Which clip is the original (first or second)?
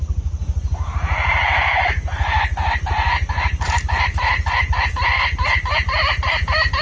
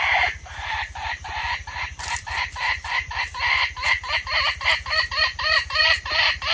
first